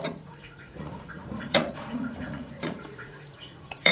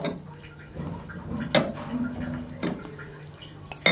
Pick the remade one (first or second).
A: first